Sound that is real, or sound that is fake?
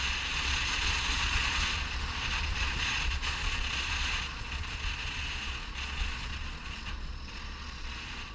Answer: fake